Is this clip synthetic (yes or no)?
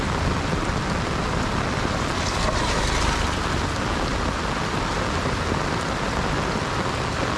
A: no